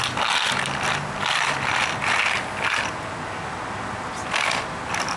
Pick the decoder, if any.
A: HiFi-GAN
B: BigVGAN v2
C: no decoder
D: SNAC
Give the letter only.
C